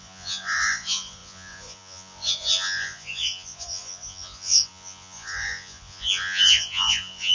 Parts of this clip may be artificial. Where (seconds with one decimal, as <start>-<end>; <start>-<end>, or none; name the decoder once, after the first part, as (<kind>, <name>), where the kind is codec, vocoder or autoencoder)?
0.0-7.3 (vocoder, Vocos)